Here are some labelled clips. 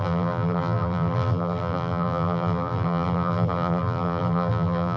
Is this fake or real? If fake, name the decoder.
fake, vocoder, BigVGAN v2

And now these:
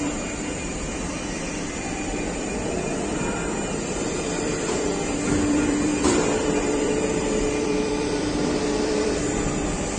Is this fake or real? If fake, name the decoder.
fake, vocoder, BigVGAN v2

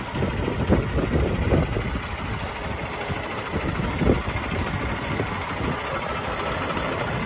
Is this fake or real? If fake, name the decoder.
real